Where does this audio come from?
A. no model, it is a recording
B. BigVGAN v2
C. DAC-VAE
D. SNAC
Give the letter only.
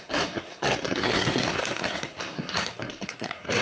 D